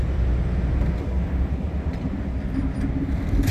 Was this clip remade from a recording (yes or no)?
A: yes